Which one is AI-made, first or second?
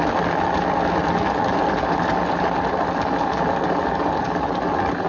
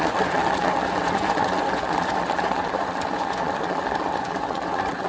second